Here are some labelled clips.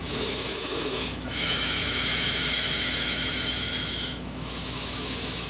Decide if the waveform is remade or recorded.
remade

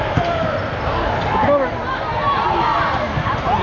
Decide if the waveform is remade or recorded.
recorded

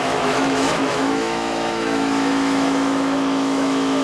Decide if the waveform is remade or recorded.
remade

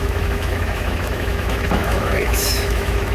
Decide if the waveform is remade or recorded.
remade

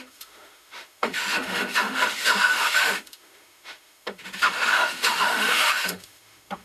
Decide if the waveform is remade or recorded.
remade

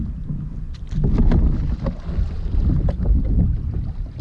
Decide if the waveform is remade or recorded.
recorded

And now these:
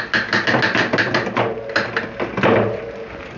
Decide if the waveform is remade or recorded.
recorded